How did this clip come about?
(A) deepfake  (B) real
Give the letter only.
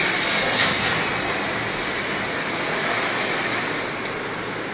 B